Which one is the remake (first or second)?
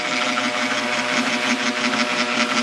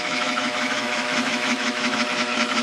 second